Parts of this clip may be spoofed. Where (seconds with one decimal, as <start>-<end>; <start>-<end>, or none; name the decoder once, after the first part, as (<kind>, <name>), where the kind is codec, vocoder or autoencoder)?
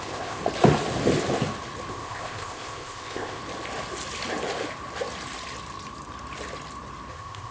0.0-0.4 (codec, ZipCodec); 1.9-3.4; 7.1-7.5